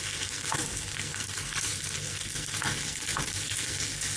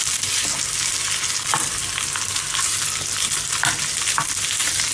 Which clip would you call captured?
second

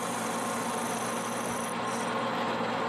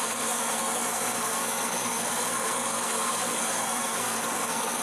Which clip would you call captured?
first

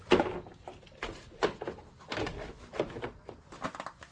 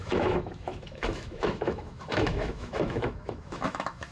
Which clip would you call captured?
first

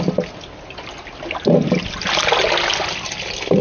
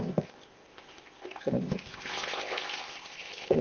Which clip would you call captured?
first